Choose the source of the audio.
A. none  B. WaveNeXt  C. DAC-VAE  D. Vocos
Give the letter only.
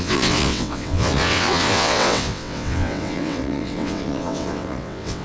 B